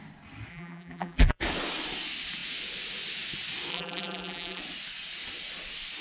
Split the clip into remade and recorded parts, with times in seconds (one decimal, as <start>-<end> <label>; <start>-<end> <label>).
0.0-0.5 recorded; 0.5-1.4 remade; 1.4-3.7 recorded; 3.7-4.6 remade; 4.6-6.0 recorded